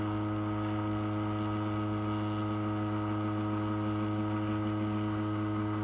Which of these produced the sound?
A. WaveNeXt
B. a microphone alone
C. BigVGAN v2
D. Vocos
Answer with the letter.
B